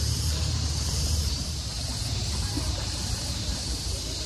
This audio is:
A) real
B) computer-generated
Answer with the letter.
B